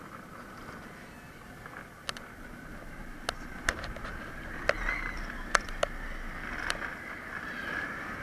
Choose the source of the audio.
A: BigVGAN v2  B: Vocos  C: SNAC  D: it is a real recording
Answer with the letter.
D